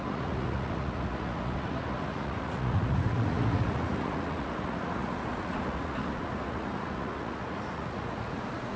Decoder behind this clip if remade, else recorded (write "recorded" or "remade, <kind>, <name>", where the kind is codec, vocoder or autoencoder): remade, vocoder, Vocos